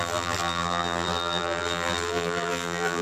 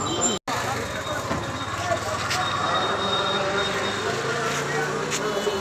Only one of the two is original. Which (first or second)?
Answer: second